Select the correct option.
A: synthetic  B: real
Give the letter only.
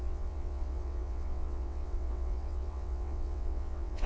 A